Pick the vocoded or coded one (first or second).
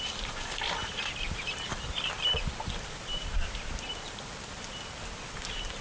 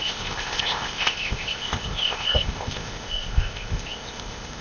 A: second